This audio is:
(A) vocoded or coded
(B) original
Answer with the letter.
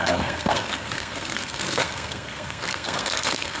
A